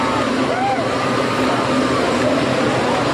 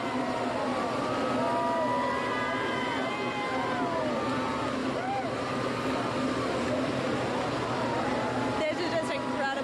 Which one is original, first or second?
second